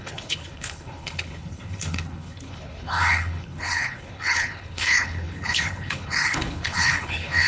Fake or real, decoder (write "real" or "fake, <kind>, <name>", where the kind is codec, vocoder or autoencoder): fake, codec, HILCodec